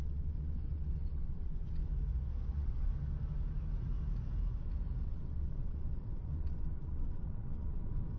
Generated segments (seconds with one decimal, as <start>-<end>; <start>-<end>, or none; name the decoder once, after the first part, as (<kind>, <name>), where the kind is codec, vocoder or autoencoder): 0.0-1.8 (vocoder, WaveNeXt); 2.5-2.9; 5.0-8.2